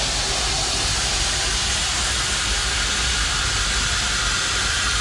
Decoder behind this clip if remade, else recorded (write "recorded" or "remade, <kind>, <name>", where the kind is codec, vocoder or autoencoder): recorded